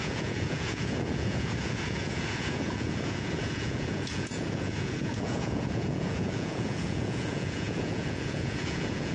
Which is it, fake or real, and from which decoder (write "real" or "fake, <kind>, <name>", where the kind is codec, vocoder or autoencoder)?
fake, vocoder, Vocos